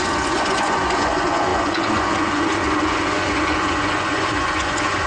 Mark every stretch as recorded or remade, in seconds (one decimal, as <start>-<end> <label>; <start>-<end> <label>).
0.0-5.1 remade